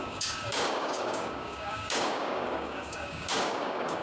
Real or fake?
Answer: fake